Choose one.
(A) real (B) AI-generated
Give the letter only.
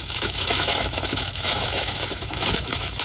B